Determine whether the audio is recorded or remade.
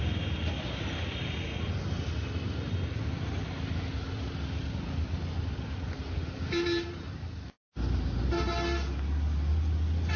recorded